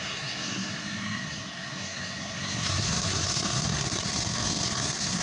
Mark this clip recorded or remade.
remade